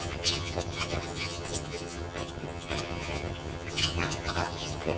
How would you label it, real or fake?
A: fake